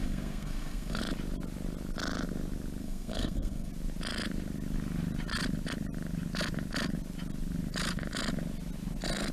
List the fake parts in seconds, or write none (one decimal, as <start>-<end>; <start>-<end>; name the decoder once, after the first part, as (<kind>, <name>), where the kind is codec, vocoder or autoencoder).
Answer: 0.0-1.0 (codec, SNAC); 2.8-3.7